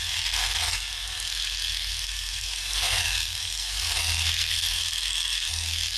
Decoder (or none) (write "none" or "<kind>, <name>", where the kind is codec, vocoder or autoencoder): codec, SNAC